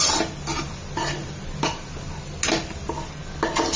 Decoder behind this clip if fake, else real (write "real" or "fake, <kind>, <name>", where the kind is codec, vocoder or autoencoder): real